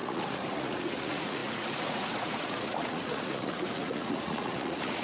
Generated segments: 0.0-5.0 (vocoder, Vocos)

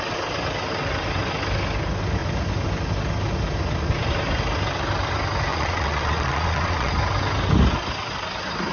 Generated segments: 5.5-6.9 (vocoder, Vocos)

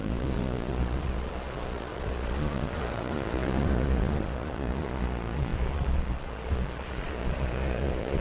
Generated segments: 0.0-8.2 (vocoder, Vocos)